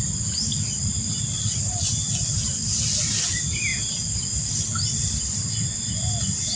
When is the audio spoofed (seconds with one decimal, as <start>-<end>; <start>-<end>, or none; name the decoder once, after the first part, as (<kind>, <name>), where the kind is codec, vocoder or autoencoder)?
none